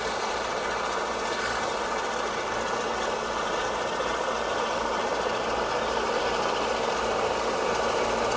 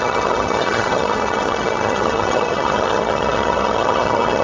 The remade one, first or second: second